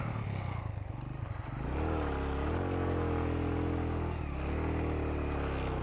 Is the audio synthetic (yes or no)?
no